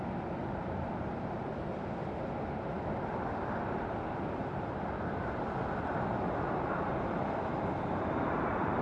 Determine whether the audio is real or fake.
fake